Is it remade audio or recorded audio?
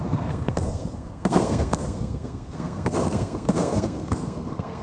remade